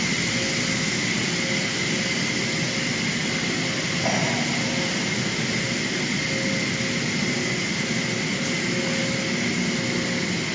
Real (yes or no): yes